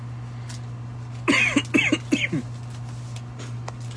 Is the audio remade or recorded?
recorded